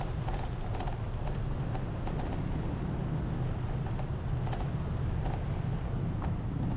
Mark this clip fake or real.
real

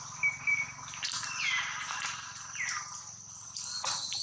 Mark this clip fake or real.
real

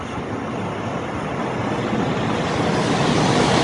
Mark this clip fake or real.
real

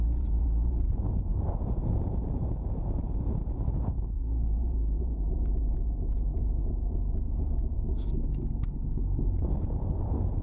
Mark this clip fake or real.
fake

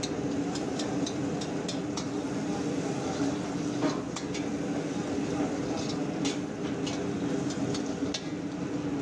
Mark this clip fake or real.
real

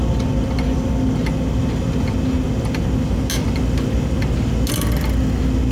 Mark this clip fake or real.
real